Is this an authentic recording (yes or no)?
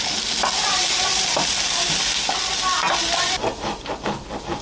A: yes